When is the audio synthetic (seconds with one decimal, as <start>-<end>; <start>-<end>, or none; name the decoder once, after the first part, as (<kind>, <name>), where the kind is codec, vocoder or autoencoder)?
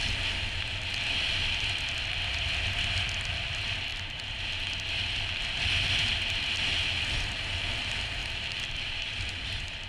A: 8.2-9.3 (vocoder, BigVGAN v2)